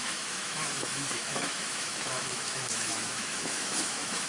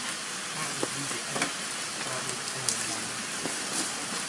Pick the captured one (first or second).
second